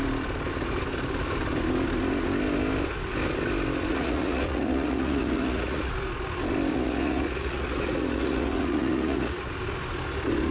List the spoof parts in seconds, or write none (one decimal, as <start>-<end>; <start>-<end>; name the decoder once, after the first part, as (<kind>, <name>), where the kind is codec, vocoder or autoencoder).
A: 3.9-5.9 (vocoder, Vocos); 6.7-9.5